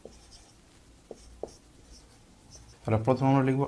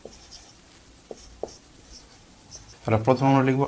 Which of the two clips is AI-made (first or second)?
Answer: second